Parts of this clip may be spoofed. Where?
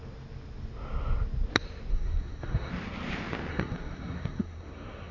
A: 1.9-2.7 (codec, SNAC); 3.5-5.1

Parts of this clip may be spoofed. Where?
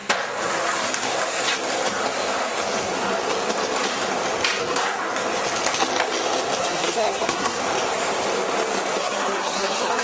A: 4.6-5.0 (codec, SNAC); 6.6-7.6; 9.0-10.0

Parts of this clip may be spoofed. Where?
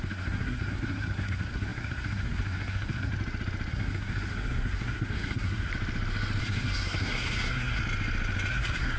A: 0.0-3.1 (codec, SNAC); 3.7-5.7; 6.4-7.8; 8.5-9.0